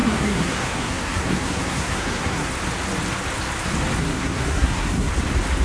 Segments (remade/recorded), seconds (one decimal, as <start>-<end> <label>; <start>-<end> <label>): 0.0-2.5 remade; 2.5-4.0 recorded; 4.0-5.1 remade; 5.1-5.6 recorded